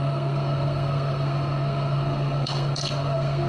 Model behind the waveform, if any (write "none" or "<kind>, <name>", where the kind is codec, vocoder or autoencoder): codec, SNAC